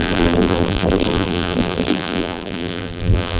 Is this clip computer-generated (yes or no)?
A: yes